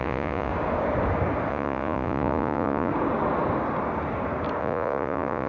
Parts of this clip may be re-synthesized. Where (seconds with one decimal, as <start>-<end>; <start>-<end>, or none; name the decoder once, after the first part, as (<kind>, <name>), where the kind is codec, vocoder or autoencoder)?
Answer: 0.0-0.5 (vocoder, Vocos); 1.5-2.9; 4.6-5.5